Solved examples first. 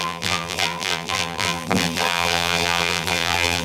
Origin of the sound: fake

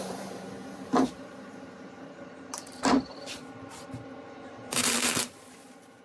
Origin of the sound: fake